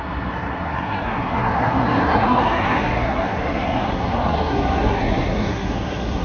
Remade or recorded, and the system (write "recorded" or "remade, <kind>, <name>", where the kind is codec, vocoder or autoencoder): remade, codec, SNAC